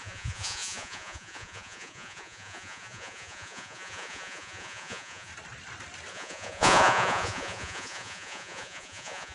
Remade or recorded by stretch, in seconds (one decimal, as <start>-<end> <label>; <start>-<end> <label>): 0.0-5.3 remade; 5.3-6.1 recorded; 6.1-9.3 remade